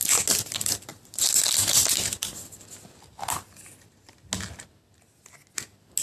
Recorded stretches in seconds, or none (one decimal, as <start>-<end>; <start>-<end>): 0.0-6.0